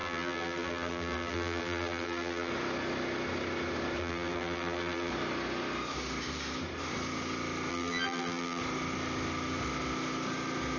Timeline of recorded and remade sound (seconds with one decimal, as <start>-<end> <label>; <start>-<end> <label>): 0.0-2.5 remade; 2.5-4.0 recorded; 4.0-5.1 remade; 5.1-7.7 recorded; 7.7-8.6 remade; 8.6-10.8 recorded

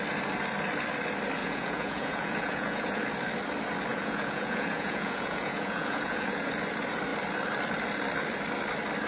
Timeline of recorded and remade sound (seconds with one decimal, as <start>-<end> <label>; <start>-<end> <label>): 0.0-1.4 recorded; 1.4-3.0 remade; 3.0-3.9 recorded; 3.9-6.5 remade; 6.5-9.1 recorded